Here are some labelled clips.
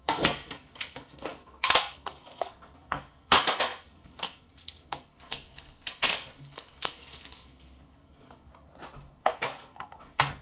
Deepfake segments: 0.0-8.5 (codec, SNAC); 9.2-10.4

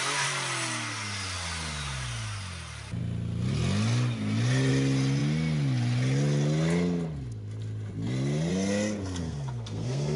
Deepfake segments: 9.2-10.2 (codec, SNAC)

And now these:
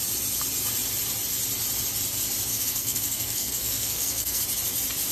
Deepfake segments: 2.5-4.4 (codec, SNAC)